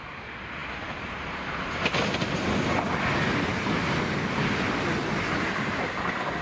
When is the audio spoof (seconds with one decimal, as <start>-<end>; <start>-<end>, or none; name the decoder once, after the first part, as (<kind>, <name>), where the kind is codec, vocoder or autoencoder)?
5.0-5.8 (vocoder, BigVGAN v2)